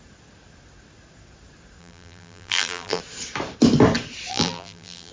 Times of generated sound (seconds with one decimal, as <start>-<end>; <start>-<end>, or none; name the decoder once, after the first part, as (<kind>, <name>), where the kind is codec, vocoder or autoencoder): 1.8-3.0 (vocoder, BigVGAN v2); 4.3-5.1

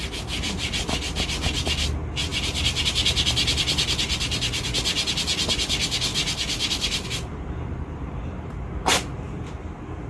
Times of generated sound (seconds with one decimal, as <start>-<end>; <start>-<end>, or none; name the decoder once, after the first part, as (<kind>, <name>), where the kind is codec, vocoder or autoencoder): 2.3-2.9 (vocoder, BigVGAN v2); 6.1-8.6

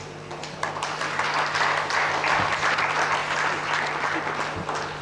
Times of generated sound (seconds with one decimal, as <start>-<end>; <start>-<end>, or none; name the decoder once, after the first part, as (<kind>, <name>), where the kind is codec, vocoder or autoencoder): 0.4-1.2 (vocoder, BigVGAN v2)

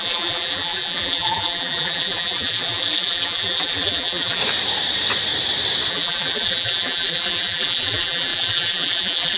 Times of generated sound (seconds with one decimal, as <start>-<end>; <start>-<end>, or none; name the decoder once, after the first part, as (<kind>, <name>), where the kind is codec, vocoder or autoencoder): 0.0-4.4 (vocoder, BigVGAN v2); 5.9-9.4

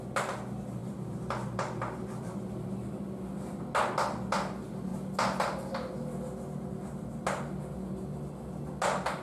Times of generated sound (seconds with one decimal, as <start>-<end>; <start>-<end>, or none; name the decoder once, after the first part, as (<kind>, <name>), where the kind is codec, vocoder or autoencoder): 0.8-3.6 (vocoder, BigVGAN v2)

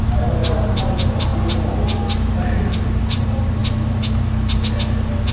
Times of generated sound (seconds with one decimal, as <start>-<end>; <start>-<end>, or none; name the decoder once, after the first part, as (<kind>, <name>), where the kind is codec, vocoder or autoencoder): 0.0-1.3 (vocoder, BigVGAN v2); 3.0-3.6

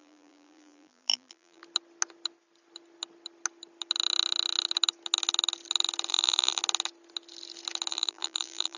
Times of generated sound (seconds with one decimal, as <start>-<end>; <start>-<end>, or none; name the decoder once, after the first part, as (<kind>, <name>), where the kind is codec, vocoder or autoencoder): 0.0-1.6 (vocoder, BigVGAN v2); 6.1-6.6; 7.9-8.8